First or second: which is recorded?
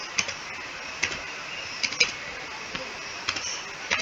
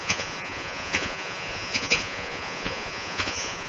first